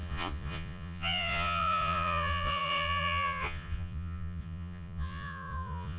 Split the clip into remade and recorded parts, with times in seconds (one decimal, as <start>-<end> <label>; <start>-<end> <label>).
0.0-6.0 remade